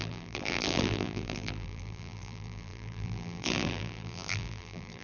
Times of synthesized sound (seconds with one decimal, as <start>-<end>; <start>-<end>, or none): 0.0-5.0